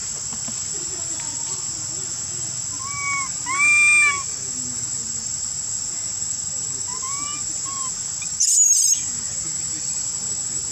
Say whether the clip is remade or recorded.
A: recorded